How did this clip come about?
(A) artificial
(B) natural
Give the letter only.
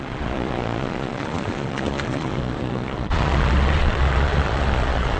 A